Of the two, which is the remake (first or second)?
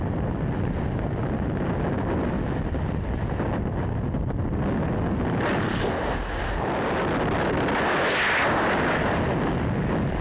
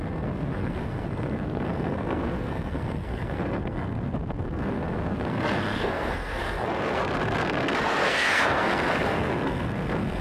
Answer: second